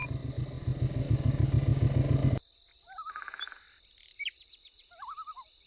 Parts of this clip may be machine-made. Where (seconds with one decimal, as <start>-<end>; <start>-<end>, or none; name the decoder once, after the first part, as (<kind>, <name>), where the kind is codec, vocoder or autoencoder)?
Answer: none